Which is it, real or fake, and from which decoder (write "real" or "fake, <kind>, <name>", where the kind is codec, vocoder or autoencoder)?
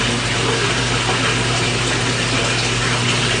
real